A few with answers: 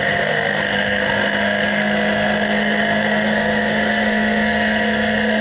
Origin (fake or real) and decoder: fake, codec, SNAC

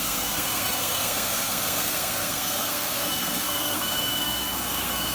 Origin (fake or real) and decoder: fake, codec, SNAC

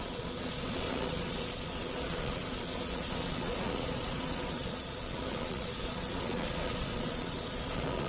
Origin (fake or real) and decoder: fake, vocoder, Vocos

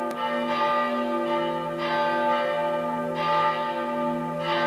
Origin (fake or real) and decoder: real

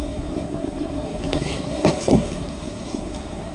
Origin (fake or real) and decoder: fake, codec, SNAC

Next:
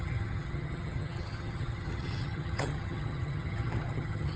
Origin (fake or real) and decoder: fake, vocoder, HiFi-GAN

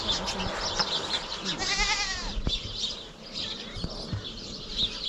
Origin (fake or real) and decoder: real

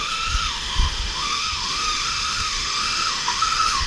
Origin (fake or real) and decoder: fake, autoencoder, DAC-VAE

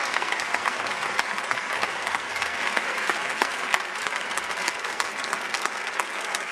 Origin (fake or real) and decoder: fake, codec, SNAC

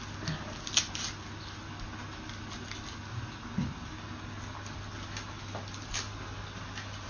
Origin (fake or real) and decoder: real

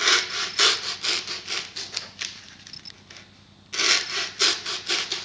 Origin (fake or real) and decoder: real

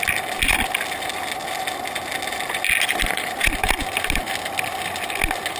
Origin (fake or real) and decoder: real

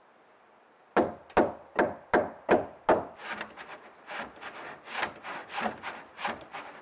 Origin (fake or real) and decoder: real